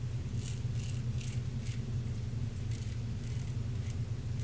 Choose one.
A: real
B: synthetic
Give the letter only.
A